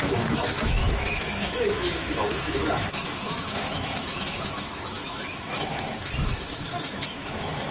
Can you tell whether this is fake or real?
fake